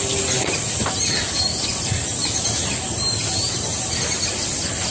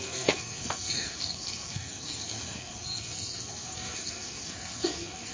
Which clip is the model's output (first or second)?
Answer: second